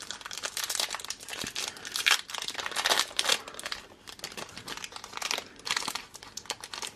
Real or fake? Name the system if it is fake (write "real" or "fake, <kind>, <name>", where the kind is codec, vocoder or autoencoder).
real